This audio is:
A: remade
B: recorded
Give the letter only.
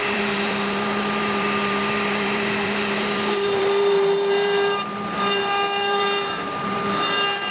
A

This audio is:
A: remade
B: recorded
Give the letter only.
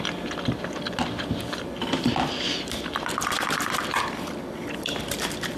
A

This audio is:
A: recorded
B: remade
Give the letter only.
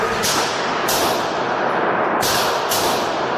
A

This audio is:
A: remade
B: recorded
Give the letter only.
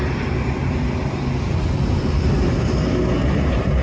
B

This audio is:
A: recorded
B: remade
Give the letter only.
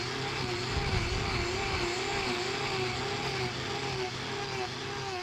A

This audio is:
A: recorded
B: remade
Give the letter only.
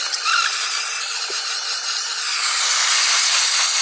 A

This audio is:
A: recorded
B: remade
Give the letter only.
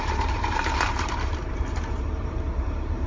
B